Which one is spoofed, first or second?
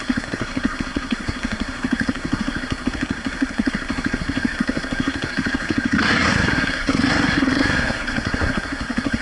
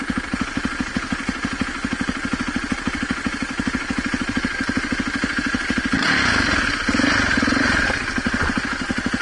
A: first